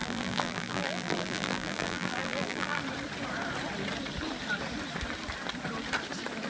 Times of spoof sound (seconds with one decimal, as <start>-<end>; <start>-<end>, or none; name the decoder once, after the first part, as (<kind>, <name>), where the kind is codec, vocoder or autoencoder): 0.0-2.8 (vocoder, BigVGAN v2)